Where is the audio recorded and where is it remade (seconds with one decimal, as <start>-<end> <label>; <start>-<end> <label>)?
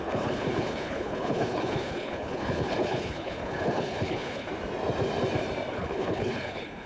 0.0-4.5 remade; 4.5-5.7 recorded; 5.7-6.9 remade